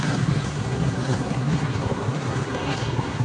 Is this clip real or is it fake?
fake